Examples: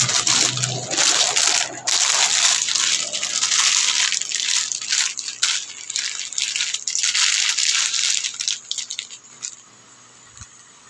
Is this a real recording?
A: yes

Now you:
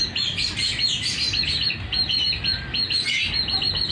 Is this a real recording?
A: yes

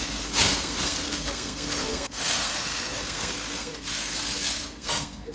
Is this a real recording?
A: no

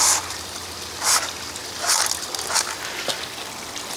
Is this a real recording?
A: yes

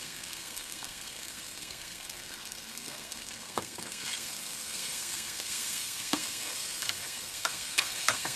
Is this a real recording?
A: no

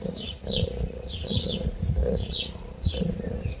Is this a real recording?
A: no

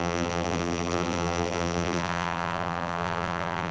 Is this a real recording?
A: no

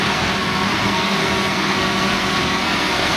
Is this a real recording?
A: no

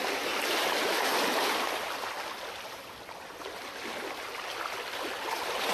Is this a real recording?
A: yes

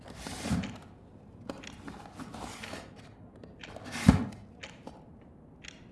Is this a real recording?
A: yes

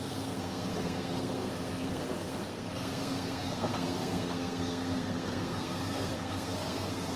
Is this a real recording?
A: no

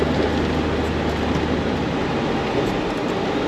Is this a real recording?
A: yes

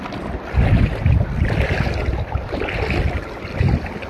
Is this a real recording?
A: yes